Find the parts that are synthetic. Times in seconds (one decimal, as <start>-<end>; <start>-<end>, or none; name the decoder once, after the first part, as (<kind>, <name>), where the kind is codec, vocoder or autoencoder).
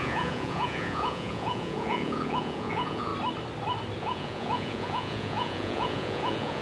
0.0-3.1 (vocoder, Vocos); 4.0-6.6